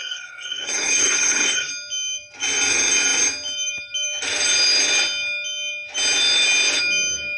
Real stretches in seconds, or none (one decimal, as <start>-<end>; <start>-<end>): 1.7-7.4